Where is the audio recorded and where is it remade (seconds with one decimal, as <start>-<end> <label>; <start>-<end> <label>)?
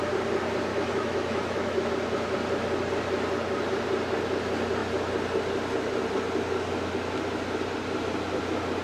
0.0-0.7 recorded; 0.7-1.9 remade; 1.9-8.8 recorded